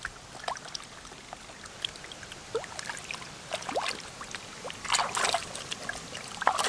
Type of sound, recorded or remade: recorded